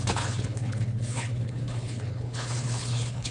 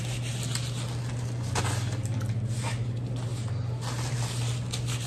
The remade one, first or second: first